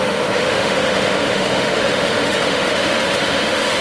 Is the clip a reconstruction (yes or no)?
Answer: yes